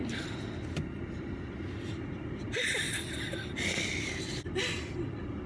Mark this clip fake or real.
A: real